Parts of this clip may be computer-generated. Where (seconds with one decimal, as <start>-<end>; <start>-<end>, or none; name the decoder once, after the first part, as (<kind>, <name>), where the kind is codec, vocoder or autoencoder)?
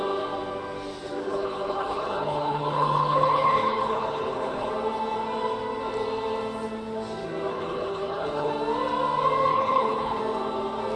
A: 1.2-4.7 (codec, HILCodec); 7.5-8.5; 9.5-10.2